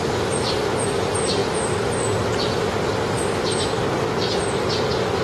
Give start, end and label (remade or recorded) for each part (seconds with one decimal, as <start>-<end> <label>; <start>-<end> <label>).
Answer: 0.0-5.2 recorded